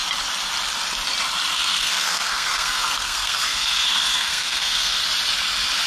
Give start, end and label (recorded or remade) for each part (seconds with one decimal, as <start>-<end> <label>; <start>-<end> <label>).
0.0-1.5 recorded; 1.5-5.0 remade; 5.0-5.9 recorded